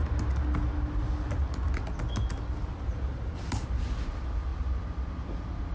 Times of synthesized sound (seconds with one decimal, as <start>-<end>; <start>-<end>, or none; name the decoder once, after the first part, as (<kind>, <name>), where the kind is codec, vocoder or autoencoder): none